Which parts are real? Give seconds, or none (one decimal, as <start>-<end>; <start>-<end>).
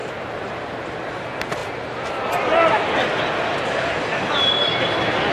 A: 0.0-5.3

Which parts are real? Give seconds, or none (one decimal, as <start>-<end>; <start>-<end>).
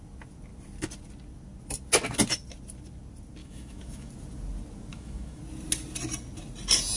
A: 0.0-3.4; 4.1-4.9; 5.4-7.0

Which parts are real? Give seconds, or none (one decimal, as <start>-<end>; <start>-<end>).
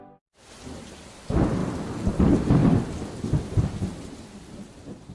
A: 1.6-2.1; 2.6-3.4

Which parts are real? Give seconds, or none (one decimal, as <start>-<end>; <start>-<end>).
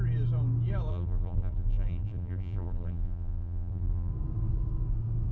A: 0.0-0.9; 4.1-5.3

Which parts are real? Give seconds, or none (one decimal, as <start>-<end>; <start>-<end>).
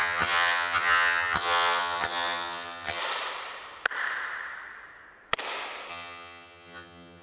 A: 3.0-5.9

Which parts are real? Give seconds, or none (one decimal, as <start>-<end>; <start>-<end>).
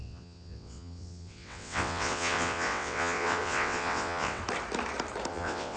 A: 4.4-5.3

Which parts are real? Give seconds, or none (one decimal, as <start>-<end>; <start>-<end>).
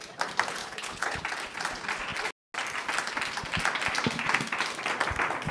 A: 0.0-0.6; 1.2-5.5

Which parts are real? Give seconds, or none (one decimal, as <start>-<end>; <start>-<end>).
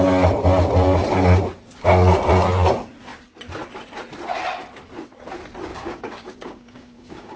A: 0.0-5.7